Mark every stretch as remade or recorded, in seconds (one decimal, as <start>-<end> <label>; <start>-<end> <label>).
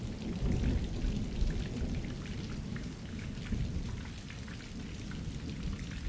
0.0-2.7 recorded; 2.7-3.4 remade; 3.4-6.1 recorded